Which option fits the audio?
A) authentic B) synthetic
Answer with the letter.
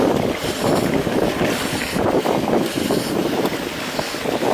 A